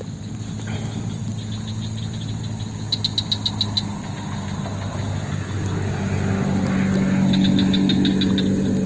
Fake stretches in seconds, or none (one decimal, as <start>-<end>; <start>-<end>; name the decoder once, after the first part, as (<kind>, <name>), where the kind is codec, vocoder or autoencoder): 1.3-3.0 (vocoder, BigVGAN v2)